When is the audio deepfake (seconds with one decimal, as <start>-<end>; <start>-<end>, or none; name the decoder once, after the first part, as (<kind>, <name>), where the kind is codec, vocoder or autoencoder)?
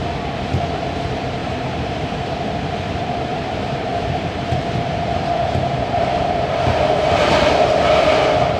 1.4-2.2 (vocoder, BigVGAN v2); 3.3-7.4